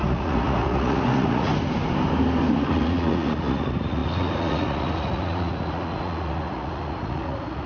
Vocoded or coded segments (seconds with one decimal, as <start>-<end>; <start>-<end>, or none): 0.0-1.5; 2.5-7.7